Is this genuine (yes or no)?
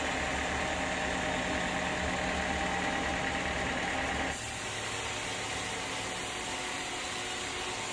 yes